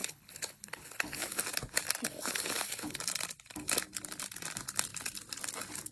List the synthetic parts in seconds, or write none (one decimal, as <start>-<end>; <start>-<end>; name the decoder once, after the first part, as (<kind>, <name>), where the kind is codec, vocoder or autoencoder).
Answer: 0.0-1.4 (codec, HILCodec); 2.1-3.0